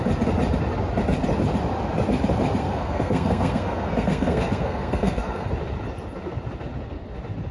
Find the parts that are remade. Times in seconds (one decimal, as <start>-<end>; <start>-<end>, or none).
2.6-5.5